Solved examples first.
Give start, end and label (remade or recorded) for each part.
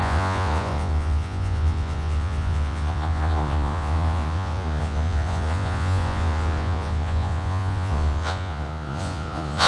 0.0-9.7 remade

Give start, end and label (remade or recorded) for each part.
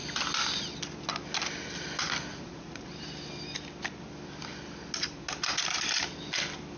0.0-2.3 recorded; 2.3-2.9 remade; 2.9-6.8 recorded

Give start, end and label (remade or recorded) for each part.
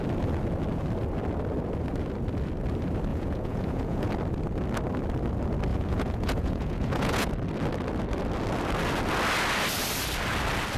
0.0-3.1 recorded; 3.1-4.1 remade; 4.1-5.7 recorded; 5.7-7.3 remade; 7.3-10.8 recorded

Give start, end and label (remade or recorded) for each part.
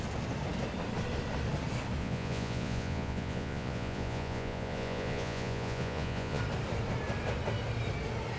0.0-2.0 recorded; 2.0-6.4 remade; 6.4-8.4 recorded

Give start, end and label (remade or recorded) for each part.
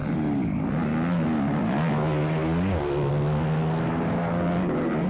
0.0-5.1 recorded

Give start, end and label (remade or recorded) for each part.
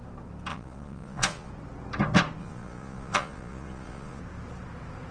0.0-0.5 recorded; 0.5-1.5 remade; 1.5-2.4 recorded; 2.4-4.2 remade; 4.2-5.1 recorded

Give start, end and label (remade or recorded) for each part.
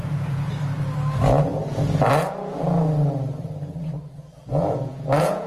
0.0-0.5 remade; 0.5-4.5 recorded; 4.5-5.5 remade